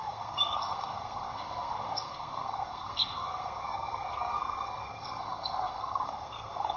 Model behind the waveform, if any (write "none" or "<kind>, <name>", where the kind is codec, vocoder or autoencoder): codec, SNAC